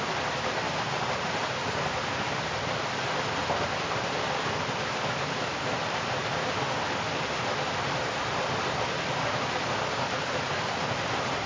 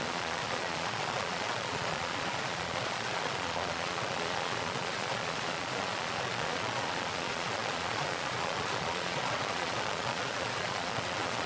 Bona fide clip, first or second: first